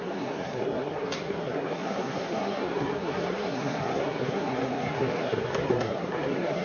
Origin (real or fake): fake